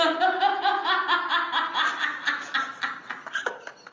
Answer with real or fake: real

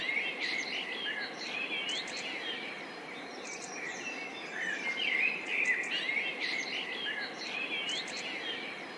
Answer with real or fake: real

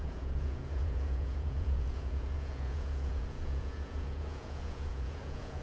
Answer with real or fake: fake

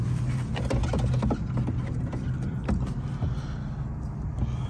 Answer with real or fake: real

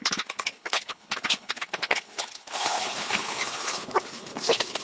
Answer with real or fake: fake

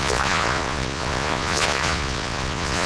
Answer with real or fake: fake